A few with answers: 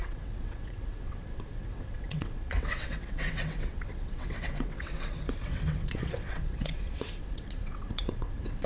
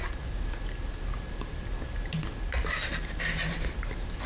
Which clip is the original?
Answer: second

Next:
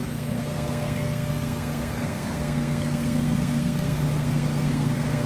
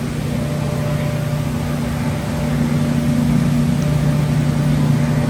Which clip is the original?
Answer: second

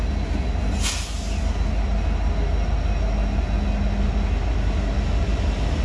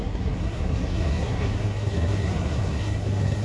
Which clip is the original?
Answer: first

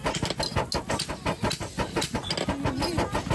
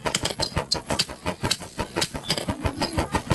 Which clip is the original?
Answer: first